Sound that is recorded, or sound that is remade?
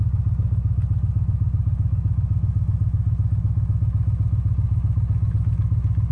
recorded